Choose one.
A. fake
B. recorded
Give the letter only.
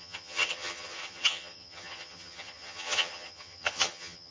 A